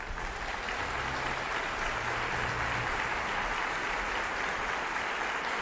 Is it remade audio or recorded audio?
recorded